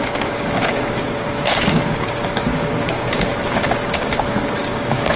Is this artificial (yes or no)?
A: yes